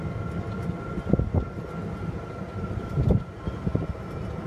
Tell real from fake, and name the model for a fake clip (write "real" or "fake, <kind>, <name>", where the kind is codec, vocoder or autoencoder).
real